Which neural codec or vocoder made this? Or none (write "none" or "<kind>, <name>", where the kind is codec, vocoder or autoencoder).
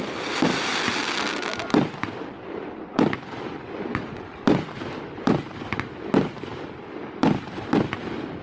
none